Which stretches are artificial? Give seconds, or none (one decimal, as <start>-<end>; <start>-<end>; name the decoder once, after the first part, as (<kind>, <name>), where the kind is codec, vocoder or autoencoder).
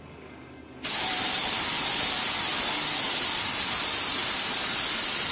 none